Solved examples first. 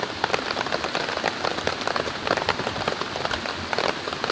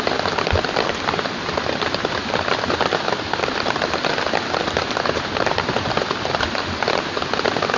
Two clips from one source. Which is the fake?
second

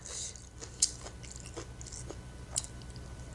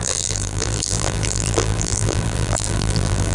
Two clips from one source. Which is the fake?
second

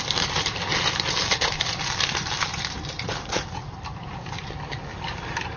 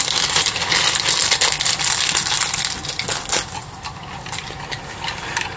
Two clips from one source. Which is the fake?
first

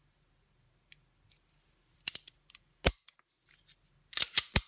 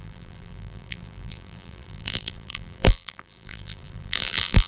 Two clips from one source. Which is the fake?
second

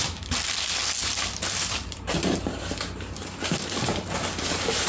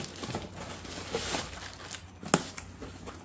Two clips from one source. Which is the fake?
first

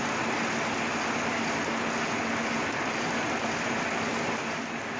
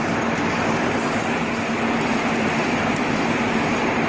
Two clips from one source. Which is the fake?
second